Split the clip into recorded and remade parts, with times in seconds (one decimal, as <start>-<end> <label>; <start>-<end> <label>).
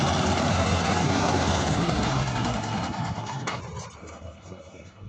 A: 0.0-0.5 recorded; 0.5-3.6 remade; 3.6-4.0 recorded; 4.0-5.1 remade